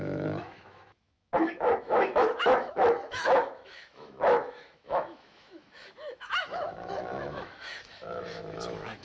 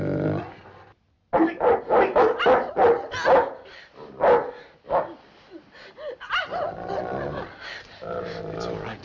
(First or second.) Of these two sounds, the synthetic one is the first